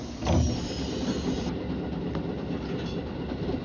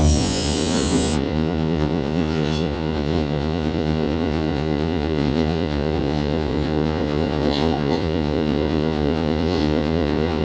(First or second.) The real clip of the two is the first